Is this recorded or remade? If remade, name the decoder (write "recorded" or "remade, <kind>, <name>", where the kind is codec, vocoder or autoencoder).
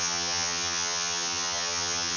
remade, vocoder, HiFi-GAN